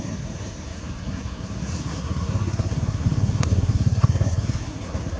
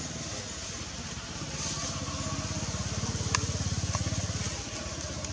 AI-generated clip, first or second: first